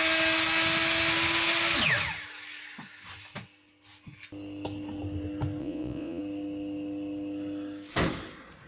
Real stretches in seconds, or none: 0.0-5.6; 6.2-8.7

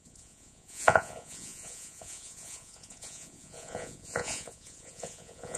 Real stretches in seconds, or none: none

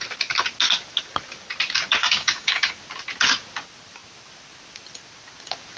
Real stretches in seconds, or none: 0.0-2.0; 2.7-5.8

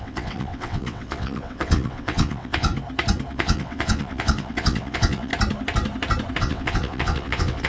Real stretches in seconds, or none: 2.7-3.3; 5.3-6.4

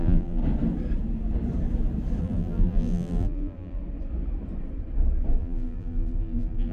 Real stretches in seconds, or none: 0.4-2.2; 3.8-5.4

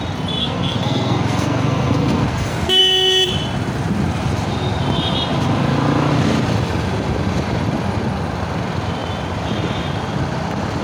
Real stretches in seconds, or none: 0.0-0.4; 2.8-10.8

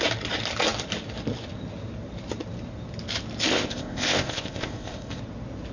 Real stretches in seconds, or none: 0.0-3.5; 5.2-5.7

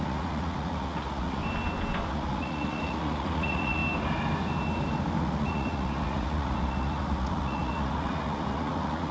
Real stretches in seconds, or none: 1.4-2.1; 3.8-5.2